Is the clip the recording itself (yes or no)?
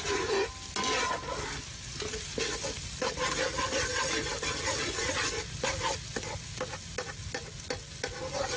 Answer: yes